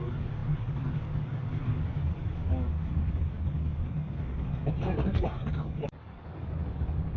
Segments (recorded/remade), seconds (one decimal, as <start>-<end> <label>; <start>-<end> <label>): 0.0-7.2 remade